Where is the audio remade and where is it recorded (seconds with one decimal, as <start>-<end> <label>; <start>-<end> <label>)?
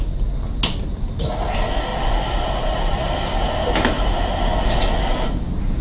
0.0-1.9 recorded; 1.9-3.0 remade; 3.0-5.8 recorded